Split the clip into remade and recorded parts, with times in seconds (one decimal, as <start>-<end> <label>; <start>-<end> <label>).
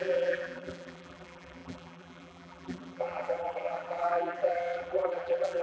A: 0.0-5.6 remade